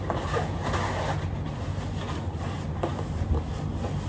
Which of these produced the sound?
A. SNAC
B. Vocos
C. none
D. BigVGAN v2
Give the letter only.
C